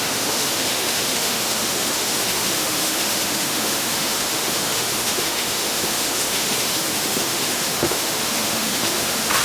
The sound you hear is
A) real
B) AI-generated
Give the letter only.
B